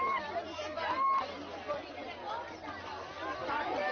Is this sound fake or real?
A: real